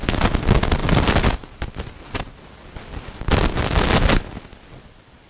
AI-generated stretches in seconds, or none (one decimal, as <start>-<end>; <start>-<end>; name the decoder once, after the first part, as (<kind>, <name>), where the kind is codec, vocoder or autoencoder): none